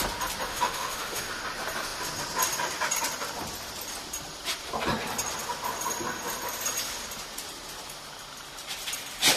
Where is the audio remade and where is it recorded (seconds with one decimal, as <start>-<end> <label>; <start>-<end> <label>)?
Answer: 0.0-0.5 recorded; 0.5-1.2 remade; 1.2-9.4 recorded